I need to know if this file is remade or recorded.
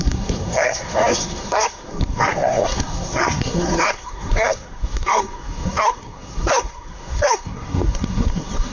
remade